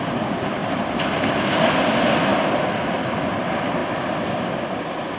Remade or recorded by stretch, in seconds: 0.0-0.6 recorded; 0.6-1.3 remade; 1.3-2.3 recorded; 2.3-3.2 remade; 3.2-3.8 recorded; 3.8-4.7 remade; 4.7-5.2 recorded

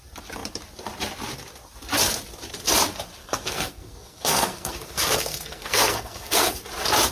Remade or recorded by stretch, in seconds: 0.0-3.2 recorded; 3.2-6.6 remade; 6.6-7.1 recorded

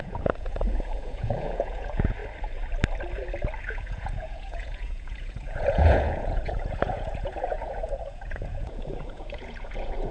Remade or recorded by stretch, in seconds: 0.0-2.2 remade; 2.2-3.6 recorded; 3.6-10.1 remade

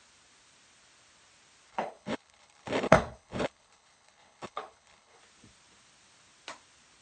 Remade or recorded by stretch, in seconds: 0.0-1.7 recorded; 1.7-5.2 remade; 5.2-7.0 recorded

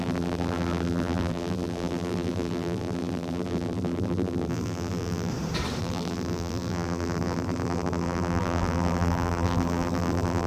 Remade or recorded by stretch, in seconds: 0.0-5.3 remade; 5.3-5.8 recorded; 5.8-10.5 remade